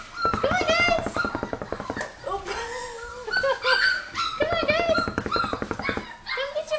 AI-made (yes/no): no